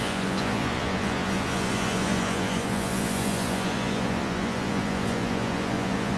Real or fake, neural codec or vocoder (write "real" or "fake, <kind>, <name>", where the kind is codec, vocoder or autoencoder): fake, vocoder, Vocos